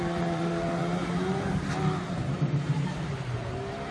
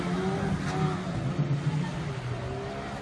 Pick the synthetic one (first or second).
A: first